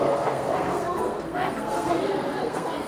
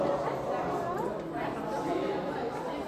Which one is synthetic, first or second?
first